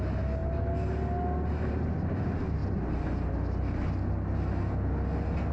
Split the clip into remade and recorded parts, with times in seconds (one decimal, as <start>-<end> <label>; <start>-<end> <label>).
0.0-5.5 recorded